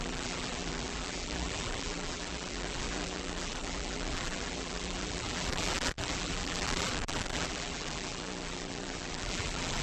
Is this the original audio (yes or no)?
no